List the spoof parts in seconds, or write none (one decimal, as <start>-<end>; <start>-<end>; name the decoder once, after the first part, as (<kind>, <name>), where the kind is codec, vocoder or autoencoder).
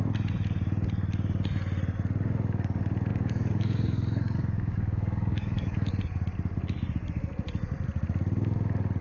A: 3.1-5.9 (codec, DAC)